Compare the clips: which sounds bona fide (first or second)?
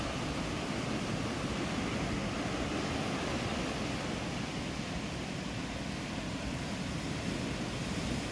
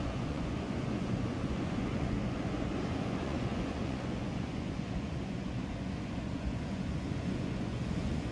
first